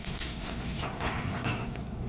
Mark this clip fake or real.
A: fake